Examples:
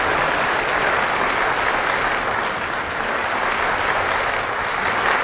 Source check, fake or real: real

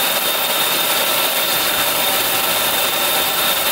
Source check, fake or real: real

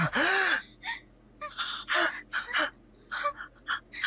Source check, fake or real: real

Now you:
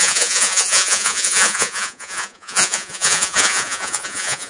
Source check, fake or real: fake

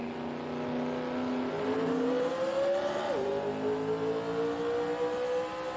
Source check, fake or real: real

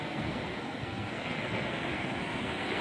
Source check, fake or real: fake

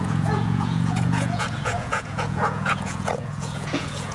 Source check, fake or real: fake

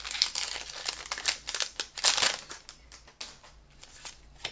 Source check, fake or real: real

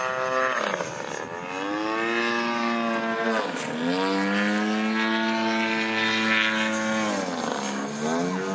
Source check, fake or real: real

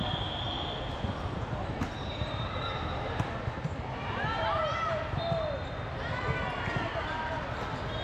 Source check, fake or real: real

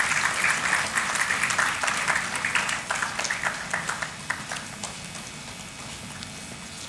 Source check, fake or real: real